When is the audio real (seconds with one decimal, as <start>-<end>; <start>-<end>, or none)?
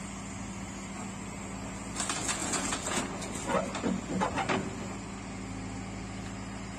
0.0-2.4; 3.0-6.8